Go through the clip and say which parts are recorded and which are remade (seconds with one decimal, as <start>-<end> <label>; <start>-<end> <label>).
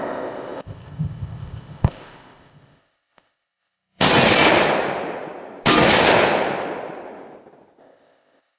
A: 0.0-4.1 remade; 4.1-7.8 recorded; 7.8-8.6 remade